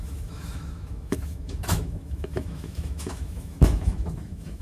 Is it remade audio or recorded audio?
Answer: remade